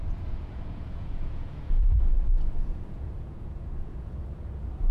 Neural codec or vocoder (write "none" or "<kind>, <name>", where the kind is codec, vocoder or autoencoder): vocoder, Vocos